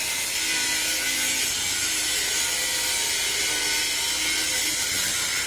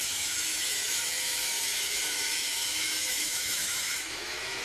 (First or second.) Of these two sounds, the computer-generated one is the second